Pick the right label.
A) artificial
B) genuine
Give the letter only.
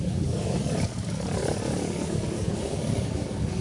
A